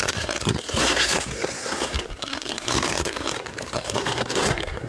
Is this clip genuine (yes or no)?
no